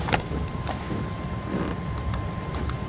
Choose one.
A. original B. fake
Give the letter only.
B